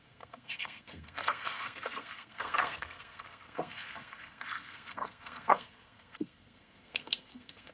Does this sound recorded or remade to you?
remade